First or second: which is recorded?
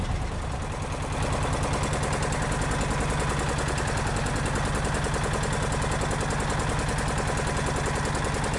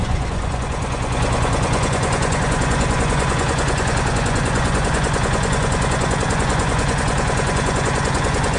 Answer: first